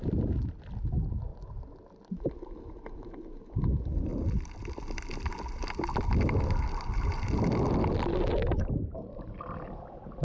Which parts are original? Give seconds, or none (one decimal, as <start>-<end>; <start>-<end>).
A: 0.0-4.1; 5.3-6.9; 8.3-8.9